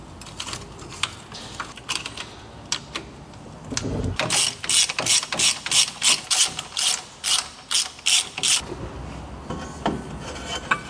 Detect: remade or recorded recorded